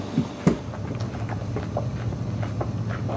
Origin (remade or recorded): recorded